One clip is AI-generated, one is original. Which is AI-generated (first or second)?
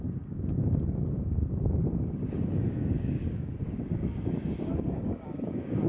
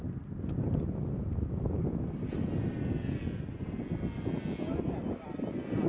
first